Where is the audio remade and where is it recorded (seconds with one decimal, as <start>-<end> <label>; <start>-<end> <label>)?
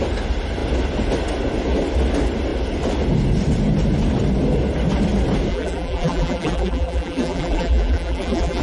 0.0-5.5 recorded; 5.5-8.6 remade